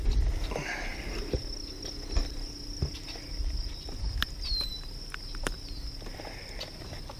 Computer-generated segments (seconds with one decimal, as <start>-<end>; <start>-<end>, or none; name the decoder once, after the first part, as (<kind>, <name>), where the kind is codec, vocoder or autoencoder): none